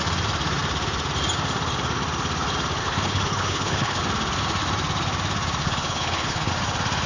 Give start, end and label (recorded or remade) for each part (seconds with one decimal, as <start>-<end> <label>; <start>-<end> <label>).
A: 0.0-2.8 recorded; 2.8-4.0 remade; 4.0-5.6 recorded; 5.6-6.5 remade; 6.5-7.1 recorded